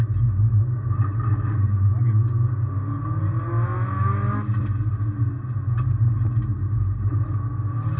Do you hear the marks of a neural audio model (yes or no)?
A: no